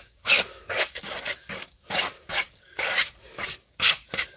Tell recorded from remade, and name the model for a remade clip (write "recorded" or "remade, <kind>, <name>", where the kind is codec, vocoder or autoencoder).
remade, codec, DAC